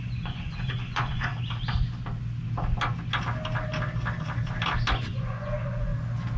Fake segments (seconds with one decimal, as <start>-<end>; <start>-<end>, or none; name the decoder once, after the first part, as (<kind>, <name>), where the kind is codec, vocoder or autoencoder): 0.0-1.3 (vocoder, Vocos); 5.0-5.9